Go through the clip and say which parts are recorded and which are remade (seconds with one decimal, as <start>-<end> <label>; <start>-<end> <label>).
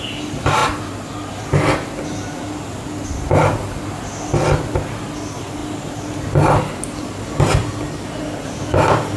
0.0-9.2 recorded